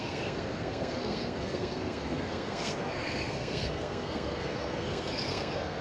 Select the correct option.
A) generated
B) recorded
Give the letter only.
A